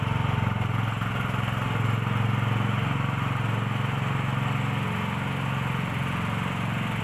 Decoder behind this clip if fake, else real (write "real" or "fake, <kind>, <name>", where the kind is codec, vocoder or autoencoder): real